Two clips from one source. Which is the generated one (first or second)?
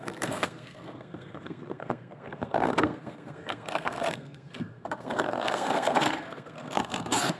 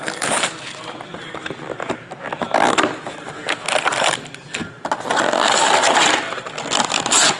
first